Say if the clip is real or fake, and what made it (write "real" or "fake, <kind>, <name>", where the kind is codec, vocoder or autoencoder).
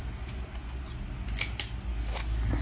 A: real